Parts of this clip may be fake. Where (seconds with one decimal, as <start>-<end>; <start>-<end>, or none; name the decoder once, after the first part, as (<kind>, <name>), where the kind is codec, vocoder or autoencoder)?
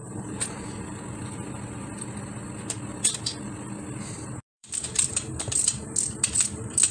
4.1-6.9 (vocoder, BigVGAN v2)